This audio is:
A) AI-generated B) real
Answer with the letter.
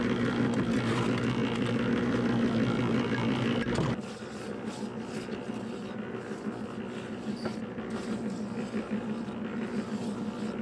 B